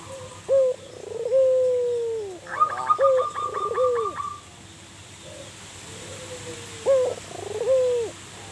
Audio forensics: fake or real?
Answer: real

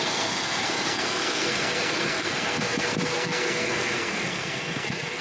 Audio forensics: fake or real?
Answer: fake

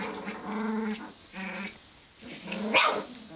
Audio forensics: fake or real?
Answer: real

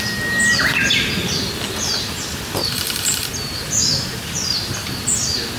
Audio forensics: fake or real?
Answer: real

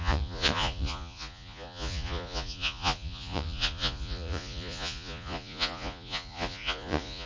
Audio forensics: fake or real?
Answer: fake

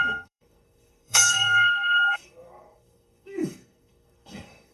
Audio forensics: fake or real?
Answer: fake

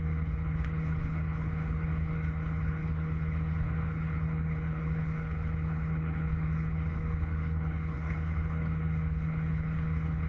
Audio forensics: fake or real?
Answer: fake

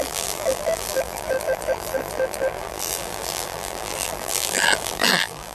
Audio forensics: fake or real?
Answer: fake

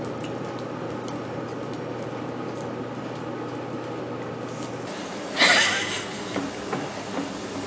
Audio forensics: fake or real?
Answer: real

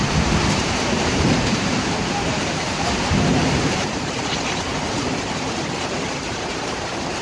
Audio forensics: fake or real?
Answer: fake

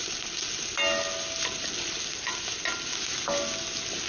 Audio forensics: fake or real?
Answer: real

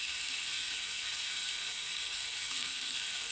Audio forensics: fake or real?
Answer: fake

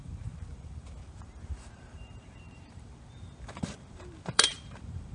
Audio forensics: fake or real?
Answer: fake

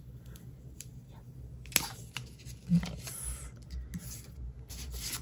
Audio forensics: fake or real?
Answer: real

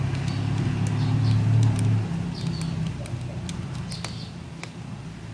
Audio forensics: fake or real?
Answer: real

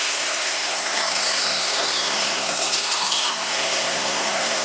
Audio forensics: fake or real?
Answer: fake